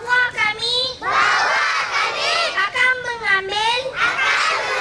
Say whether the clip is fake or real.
real